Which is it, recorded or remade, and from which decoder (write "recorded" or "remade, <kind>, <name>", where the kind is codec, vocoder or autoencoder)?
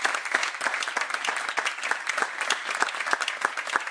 recorded